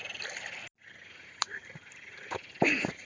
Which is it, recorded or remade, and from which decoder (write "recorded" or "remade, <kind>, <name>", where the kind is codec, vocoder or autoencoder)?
recorded